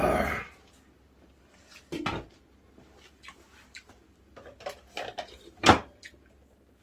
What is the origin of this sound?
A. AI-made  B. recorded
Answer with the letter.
B